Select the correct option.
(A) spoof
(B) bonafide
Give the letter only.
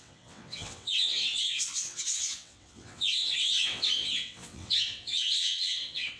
A